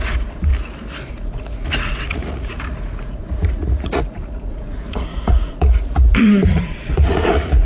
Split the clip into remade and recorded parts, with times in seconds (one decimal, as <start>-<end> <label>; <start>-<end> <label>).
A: 0.0-0.5 remade; 0.5-1.1 recorded; 1.1-7.7 remade